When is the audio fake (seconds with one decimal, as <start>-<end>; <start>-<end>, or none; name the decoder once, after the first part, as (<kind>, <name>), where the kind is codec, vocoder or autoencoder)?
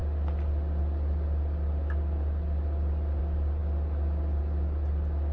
none